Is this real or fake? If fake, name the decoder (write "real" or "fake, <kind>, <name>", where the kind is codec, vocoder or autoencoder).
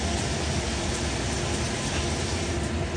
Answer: real